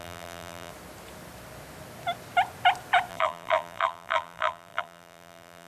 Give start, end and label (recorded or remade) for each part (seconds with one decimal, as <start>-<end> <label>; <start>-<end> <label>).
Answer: 0.0-0.7 remade; 0.7-3.1 recorded; 3.1-5.7 remade